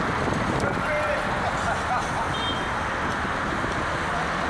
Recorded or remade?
recorded